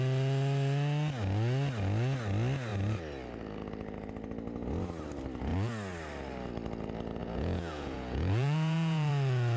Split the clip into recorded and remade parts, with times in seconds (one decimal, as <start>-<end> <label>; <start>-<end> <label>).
0.0-7.2 recorded; 7.2-9.1 remade; 9.1-9.6 recorded